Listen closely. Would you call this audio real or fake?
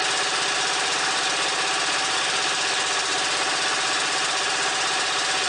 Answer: real